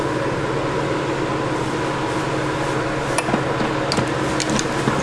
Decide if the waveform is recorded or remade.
recorded